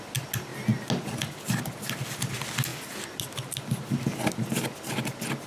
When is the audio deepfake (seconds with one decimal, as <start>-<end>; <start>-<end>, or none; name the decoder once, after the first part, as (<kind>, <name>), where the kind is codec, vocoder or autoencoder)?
none